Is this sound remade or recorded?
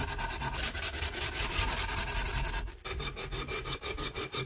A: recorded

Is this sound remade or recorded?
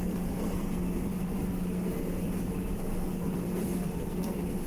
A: remade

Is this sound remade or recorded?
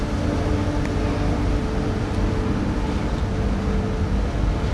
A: recorded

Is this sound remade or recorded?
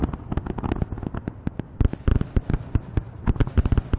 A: recorded